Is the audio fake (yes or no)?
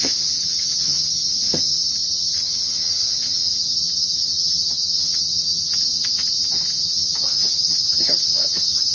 yes